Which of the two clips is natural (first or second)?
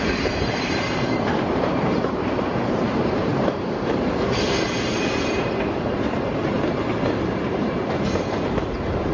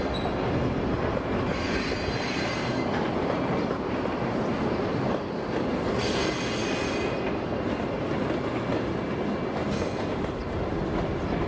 second